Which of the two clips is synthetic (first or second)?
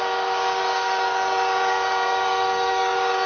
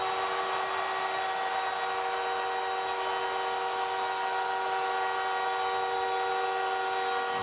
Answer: first